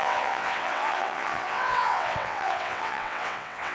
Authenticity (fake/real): fake